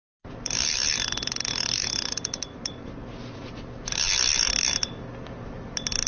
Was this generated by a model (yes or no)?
no